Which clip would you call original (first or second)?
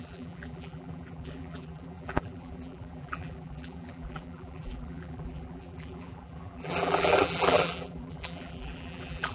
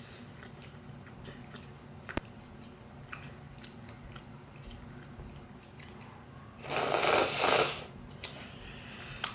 second